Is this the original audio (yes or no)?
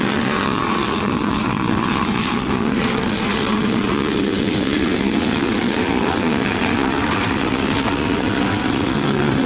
no